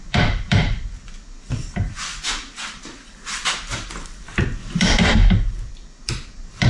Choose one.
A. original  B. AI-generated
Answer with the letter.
B